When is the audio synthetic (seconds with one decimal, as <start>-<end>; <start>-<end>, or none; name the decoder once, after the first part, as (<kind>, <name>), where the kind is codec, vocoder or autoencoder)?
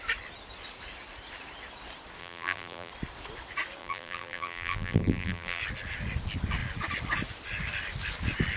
2.2-2.9 (vocoder, BigVGAN v2); 3.8-5.6